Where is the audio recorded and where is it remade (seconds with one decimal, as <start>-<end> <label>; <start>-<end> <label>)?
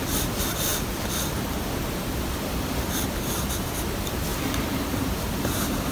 0.0-4.3 recorded; 4.3-5.9 remade